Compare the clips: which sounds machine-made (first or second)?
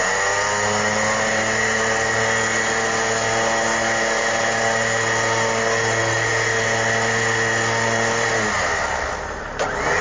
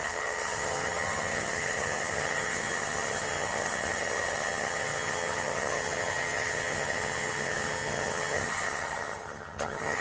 second